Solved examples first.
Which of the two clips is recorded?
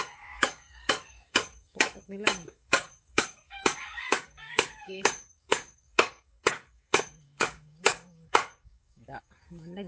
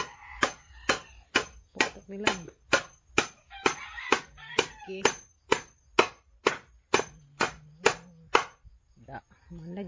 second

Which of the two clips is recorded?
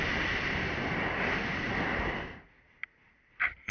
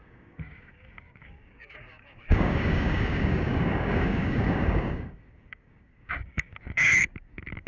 first